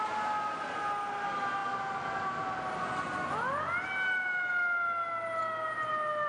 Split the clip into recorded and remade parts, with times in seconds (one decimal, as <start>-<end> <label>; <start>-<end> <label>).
0.0-6.3 recorded